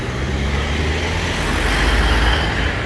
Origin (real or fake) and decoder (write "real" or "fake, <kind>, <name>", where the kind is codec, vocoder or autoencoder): real